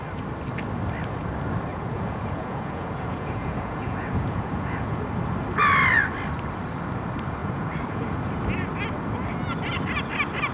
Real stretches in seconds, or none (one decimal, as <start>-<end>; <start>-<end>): 0.0-1.7; 5.0-7.4; 8.3-10.5

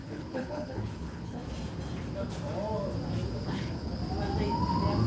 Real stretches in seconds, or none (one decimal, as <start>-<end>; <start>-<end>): 1.4-3.4; 4.0-5.1

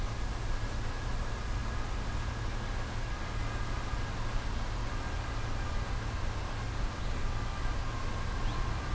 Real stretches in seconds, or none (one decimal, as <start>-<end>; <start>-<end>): 0.0-8.9

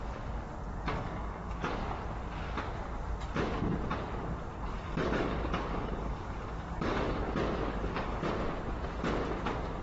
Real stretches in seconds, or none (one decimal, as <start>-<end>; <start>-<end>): 0.0-0.9; 1.7-4.5; 7.3-7.7; 8.3-9.8